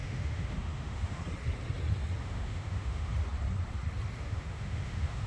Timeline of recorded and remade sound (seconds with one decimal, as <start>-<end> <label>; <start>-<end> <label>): 0.0-1.2 remade; 1.2-2.2 recorded; 2.2-3.1 remade; 3.1-4.2 recorded; 4.2-5.3 remade